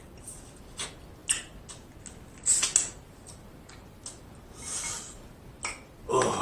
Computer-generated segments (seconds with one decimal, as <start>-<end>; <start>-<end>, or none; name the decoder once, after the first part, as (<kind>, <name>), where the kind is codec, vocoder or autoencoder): none